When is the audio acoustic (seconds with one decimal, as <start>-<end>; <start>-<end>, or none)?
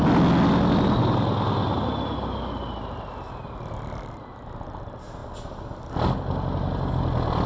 0.0-7.5